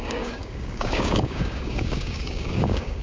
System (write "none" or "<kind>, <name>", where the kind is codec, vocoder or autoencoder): codec, DAC